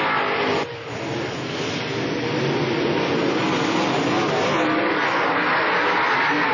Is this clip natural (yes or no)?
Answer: yes